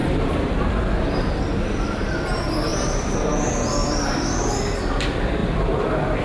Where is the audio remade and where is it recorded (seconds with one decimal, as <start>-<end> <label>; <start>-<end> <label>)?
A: 0.0-0.7 remade; 0.7-2.7 recorded; 2.7-3.3 remade; 3.3-3.8 recorded; 3.8-4.6 remade; 4.6-5.4 recorded; 5.4-6.2 remade